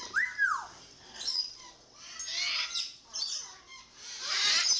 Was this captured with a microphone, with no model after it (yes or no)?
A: yes